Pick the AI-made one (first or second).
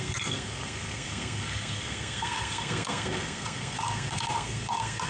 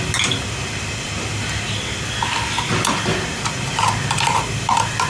first